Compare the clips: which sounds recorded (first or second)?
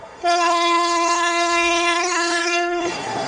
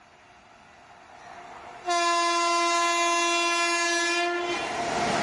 second